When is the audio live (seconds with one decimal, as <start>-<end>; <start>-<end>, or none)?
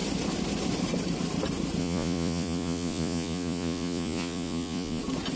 0.0-1.8; 5.0-5.4